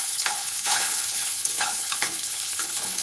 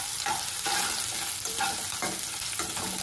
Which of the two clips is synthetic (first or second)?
first